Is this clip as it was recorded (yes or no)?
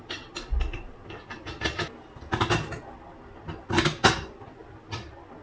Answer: yes